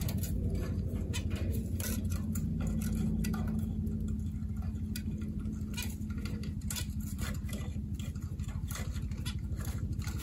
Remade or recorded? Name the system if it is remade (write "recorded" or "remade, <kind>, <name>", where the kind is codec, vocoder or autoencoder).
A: recorded